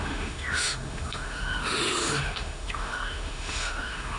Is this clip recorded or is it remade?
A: remade